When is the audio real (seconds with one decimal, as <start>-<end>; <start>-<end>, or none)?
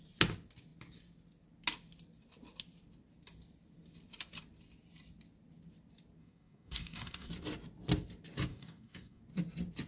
0.0-6.2; 7.3-8.5; 9.2-9.9